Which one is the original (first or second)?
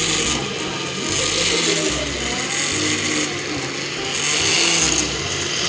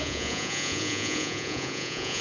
first